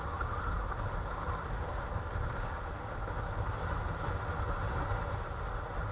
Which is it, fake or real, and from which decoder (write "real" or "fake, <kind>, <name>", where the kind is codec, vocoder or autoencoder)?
real